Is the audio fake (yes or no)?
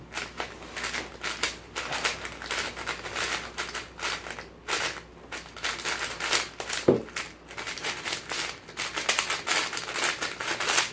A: no